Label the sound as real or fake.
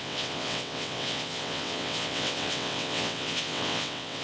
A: fake